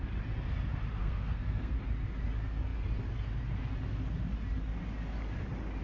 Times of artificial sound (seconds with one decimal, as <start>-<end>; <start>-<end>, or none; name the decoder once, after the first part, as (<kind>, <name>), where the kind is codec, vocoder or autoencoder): 1.0-1.8 (codec, SNAC)